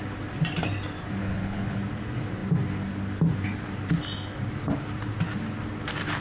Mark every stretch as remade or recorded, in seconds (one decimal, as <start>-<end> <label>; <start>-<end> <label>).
0.0-1.2 recorded; 1.2-1.8 remade; 1.8-6.2 recorded